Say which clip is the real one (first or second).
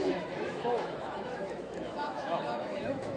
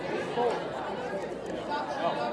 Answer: second